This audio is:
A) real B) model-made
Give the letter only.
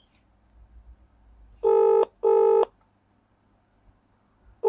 A